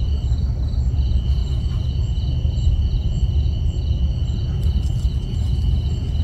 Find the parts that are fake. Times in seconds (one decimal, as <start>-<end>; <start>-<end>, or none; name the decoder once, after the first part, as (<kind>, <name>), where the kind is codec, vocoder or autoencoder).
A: none